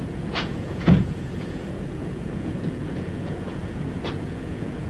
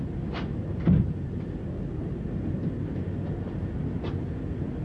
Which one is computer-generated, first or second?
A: first